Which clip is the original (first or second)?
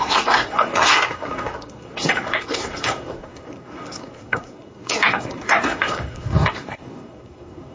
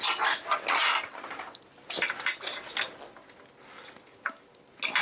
second